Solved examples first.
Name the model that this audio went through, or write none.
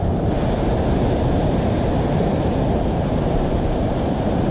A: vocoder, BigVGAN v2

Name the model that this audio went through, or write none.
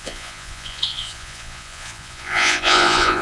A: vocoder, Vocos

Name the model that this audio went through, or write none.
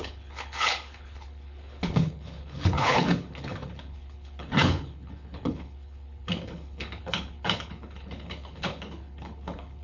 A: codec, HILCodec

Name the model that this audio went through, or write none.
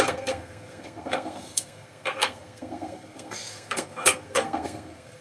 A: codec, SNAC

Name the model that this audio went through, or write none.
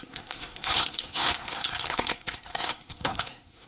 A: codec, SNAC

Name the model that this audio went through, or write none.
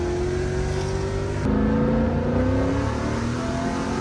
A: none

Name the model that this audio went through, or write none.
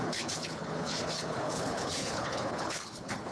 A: codec, HILCodec